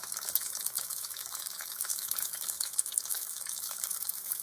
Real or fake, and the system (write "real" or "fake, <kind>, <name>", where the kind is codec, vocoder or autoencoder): fake, autoencoder, DAC-VAE